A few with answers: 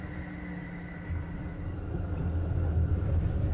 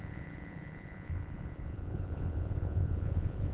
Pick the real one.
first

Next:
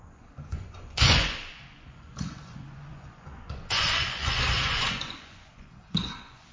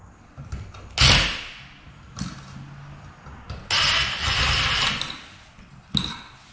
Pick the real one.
second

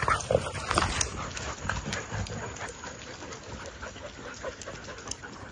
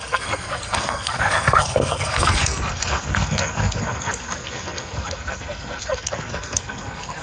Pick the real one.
first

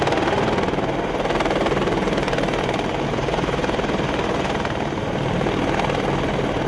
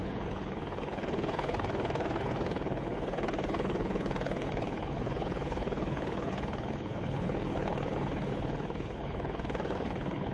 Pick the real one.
first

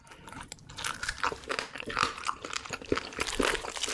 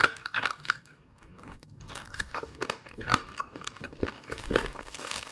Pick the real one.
first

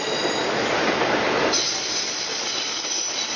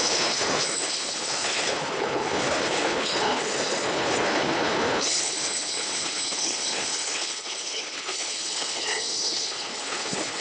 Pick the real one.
first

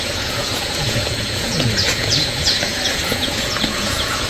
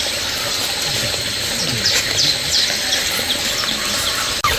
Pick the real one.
second